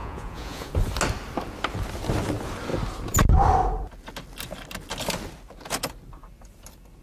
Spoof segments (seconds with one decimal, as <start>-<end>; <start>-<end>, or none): 0.0-0.7